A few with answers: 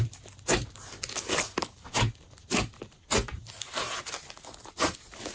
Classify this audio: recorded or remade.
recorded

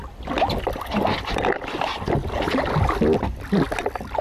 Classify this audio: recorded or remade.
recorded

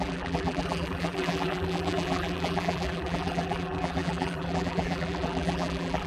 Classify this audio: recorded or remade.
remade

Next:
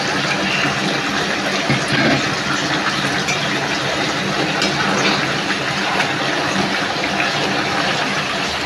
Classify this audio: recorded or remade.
recorded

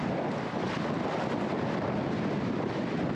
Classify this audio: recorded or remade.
remade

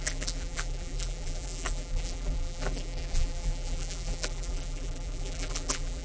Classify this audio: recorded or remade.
remade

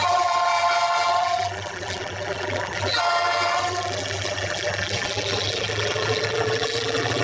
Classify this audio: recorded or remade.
remade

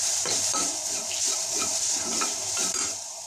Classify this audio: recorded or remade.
remade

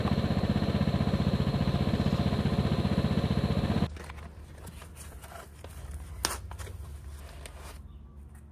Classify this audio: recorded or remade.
recorded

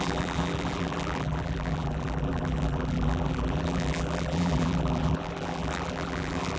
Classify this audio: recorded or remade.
remade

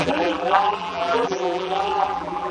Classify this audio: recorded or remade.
remade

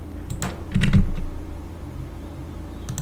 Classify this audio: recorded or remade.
recorded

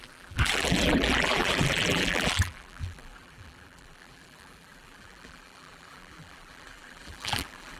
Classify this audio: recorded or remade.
remade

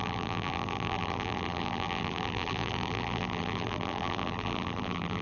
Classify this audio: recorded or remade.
remade